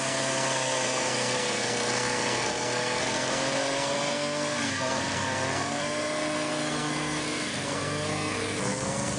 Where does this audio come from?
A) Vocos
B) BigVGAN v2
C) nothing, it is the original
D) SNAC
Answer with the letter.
D